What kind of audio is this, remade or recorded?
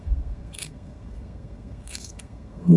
remade